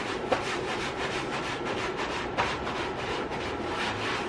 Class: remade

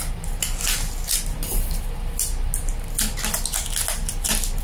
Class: recorded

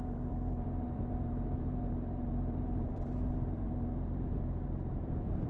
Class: remade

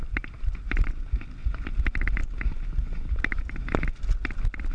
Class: recorded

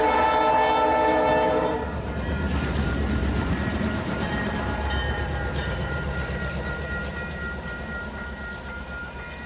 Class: remade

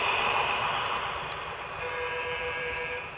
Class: remade